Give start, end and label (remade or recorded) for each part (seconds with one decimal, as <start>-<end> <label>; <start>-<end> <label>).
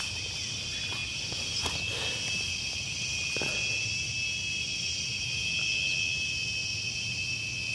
0.0-7.7 recorded